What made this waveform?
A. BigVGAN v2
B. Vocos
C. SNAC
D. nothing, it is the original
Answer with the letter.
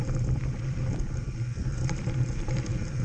A